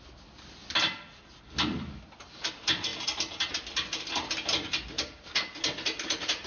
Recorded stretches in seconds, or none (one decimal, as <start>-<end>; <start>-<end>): 0.0-6.5